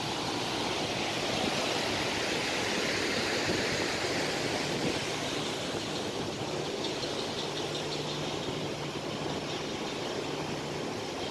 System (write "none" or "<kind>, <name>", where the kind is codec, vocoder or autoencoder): none